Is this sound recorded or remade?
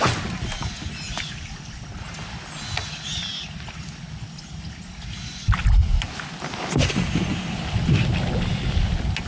recorded